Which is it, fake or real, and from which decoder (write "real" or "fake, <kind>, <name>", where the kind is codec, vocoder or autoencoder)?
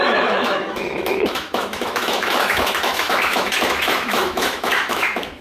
fake, autoencoder, DAC-VAE